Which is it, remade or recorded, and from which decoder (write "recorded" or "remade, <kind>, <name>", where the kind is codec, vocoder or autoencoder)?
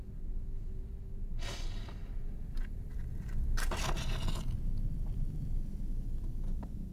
recorded